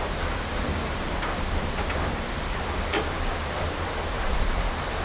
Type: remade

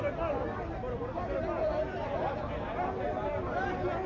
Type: recorded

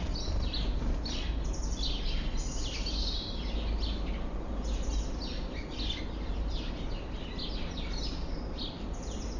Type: recorded